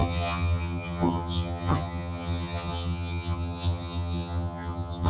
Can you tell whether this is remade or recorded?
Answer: remade